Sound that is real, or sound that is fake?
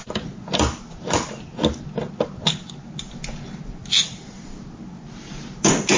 real